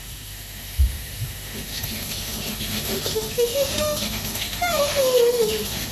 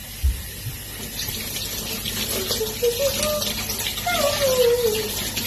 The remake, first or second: first